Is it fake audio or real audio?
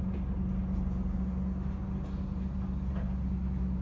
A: real